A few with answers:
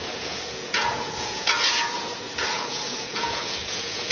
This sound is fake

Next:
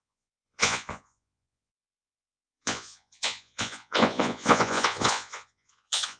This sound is fake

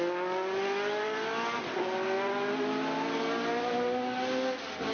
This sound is real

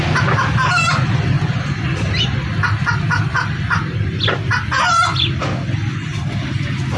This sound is real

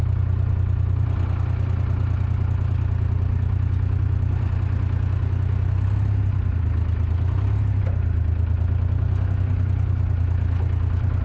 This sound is real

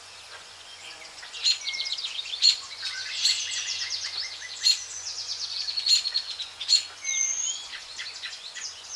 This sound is fake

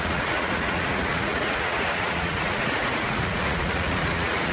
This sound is fake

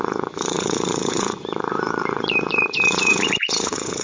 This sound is fake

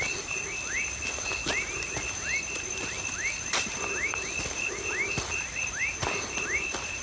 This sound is real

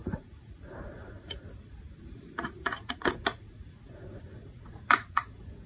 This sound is fake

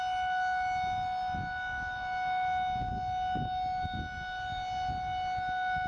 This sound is real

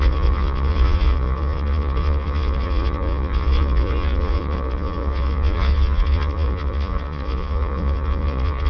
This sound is fake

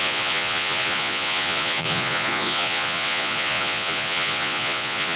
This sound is fake